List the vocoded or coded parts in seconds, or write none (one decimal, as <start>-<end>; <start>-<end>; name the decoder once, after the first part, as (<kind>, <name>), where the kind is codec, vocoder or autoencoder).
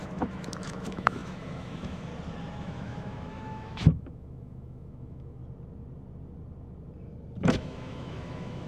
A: 0.0-2.1 (autoencoder, DAC-VAE); 2.6-5.4; 7.4-8.7